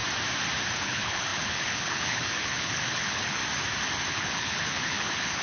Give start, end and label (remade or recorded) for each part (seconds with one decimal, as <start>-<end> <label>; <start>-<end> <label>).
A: 0.0-0.8 recorded; 0.8-3.4 remade; 3.4-4.1 recorded; 4.1-5.4 remade